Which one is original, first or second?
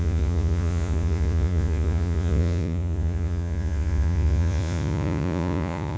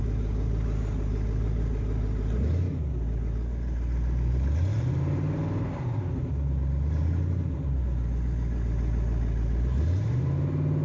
second